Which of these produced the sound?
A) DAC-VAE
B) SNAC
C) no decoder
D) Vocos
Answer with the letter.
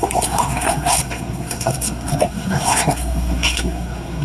B